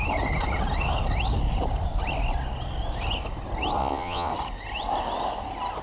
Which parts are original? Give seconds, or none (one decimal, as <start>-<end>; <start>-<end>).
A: 0.0-3.8; 4.3-5.8